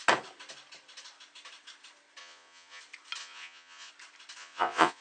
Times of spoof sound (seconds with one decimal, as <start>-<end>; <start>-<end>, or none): 2.2-2.8; 3.2-3.9; 4.4-5.0